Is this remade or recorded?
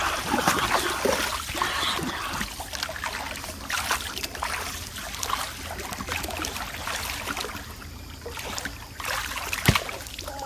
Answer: recorded